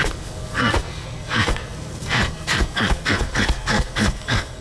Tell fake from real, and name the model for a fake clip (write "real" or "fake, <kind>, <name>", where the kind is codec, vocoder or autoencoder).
fake, codec, SNAC